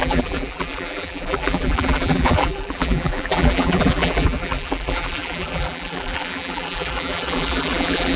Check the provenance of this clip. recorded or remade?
remade